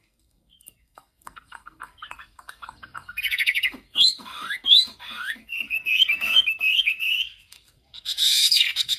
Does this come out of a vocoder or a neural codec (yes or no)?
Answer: yes